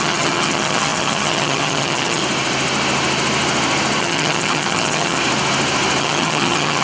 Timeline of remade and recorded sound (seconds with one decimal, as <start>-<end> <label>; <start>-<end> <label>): 0.0-2.2 remade; 2.2-4.0 recorded; 4.0-5.2 remade; 5.2-6.0 recorded; 6.0-6.8 remade